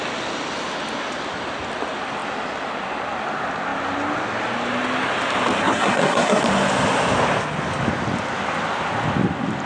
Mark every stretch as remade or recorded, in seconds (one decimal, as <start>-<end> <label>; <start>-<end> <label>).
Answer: 0.0-5.6 recorded; 5.6-6.4 remade; 6.4-9.7 recorded